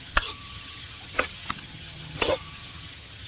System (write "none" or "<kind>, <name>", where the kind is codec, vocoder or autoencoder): vocoder, HiFi-GAN